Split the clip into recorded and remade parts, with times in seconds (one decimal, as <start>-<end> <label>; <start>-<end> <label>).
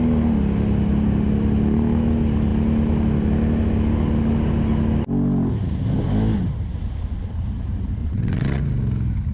0.0-8.0 recorded; 8.0-8.6 remade; 8.6-9.3 recorded